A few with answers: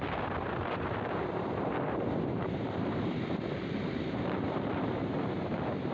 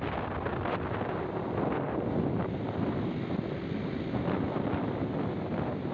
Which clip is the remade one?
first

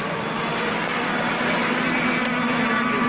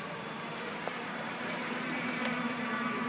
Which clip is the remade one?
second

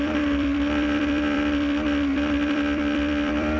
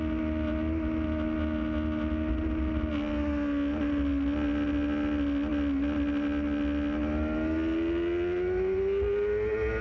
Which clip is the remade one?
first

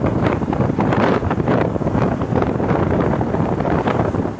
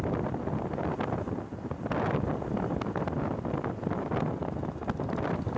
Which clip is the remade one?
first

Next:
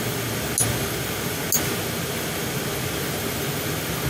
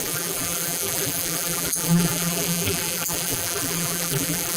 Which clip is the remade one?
second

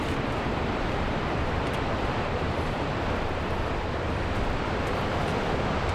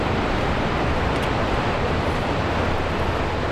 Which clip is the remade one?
first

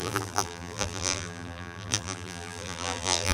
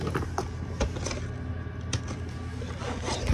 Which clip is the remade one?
first